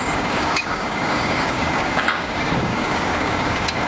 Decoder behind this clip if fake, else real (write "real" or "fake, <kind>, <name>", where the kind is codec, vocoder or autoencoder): fake, codec, DAC